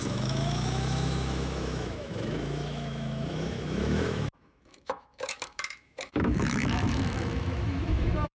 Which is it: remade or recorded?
remade